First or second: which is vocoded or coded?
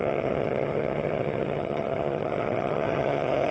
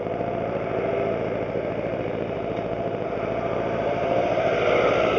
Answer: first